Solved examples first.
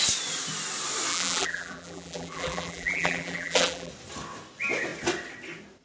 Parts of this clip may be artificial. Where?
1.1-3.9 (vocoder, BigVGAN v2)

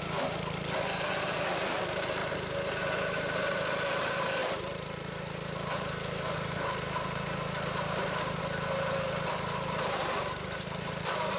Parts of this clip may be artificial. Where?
0.0-2.2 (vocoder, BigVGAN v2); 2.8-11.4